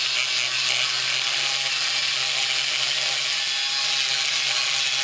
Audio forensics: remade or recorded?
recorded